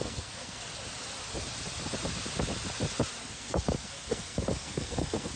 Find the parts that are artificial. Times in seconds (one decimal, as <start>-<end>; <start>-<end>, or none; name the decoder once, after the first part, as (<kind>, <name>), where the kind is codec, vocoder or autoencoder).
0.0-0.7 (codec, SNAC); 3.3-5.4